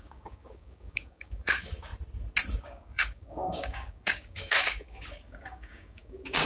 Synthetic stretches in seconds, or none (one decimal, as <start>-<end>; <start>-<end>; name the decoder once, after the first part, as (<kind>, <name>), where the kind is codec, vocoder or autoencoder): 0.0-1.9 (codec, DAC); 2.6-6.5